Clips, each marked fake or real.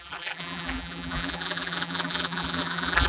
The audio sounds fake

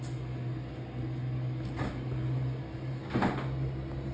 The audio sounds real